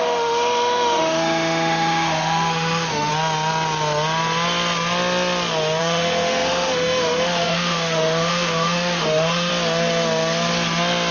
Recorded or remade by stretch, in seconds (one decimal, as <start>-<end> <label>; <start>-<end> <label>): 0.0-3.1 remade; 3.1-5.8 recorded; 5.8-9.5 remade; 9.5-11.1 recorded